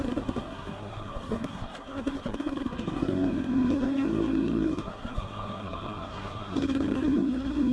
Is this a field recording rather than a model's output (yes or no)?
no